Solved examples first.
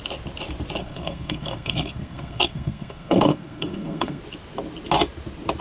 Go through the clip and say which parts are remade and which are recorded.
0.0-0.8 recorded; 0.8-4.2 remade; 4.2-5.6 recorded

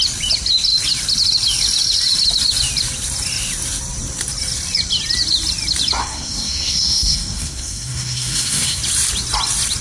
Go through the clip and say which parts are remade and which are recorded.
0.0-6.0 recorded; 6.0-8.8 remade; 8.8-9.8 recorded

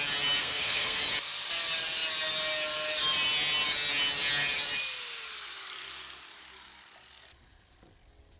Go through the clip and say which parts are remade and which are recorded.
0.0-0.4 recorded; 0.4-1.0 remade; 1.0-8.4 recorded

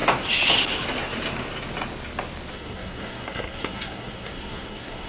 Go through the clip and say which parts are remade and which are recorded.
0.0-2.5 recorded; 2.5-5.1 remade

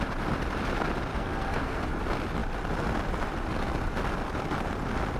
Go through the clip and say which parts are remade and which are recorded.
0.0-1.1 recorded; 1.1-1.8 remade; 1.8-5.2 recorded

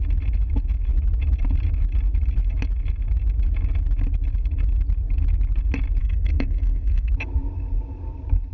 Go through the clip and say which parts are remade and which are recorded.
0.0-6.0 recorded; 6.0-7.1 remade; 7.1-8.5 recorded